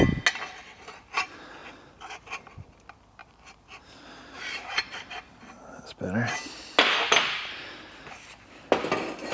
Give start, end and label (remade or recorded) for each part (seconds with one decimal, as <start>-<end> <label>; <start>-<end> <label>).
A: 0.0-3.2 recorded; 3.2-5.2 remade; 5.2-7.6 recorded; 7.6-8.9 remade; 8.9-9.3 recorded